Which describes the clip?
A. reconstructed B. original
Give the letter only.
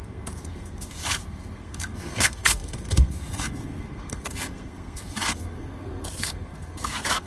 A